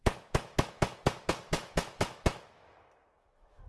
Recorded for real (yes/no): no